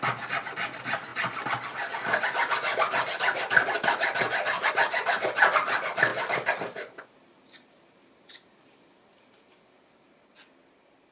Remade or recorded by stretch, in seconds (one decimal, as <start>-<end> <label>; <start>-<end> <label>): 0.0-11.1 recorded